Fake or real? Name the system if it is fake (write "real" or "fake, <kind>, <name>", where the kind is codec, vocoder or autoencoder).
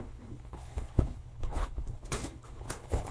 fake, codec, HILCodec